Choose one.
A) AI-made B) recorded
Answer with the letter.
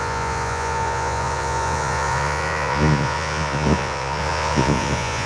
A